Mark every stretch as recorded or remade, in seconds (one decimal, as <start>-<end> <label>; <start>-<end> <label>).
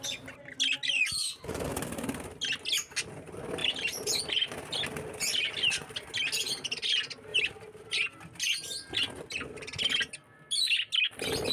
0.0-3.6 recorded; 3.6-4.2 remade; 4.2-7.3 recorded; 7.3-8.1 remade; 8.1-11.5 recorded